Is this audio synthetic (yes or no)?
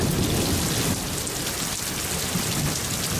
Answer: no